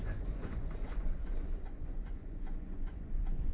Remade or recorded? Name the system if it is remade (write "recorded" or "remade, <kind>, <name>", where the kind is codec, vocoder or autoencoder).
remade, vocoder, Vocos